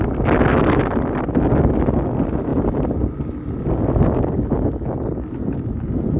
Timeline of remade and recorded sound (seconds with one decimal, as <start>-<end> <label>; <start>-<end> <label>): 0.0-6.2 recorded